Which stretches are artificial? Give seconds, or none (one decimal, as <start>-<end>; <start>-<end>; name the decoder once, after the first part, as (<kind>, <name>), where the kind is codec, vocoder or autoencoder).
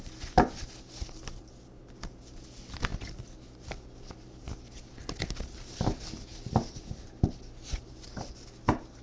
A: none